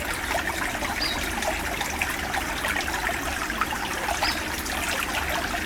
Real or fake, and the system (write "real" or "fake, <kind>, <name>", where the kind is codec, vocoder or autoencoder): real